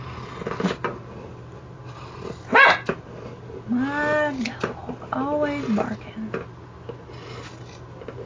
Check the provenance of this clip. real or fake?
real